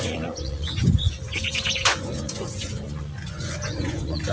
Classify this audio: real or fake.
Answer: fake